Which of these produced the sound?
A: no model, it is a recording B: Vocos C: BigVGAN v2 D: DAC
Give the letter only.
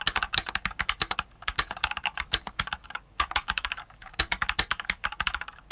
D